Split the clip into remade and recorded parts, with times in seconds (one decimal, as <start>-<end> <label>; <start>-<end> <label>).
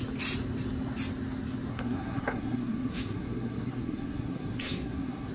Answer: 0.0-1.7 recorded; 1.7-5.3 remade